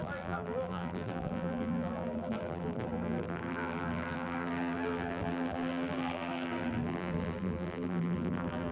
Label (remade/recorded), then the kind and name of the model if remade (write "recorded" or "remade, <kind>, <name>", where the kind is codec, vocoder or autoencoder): remade, vocoder, BigVGAN v2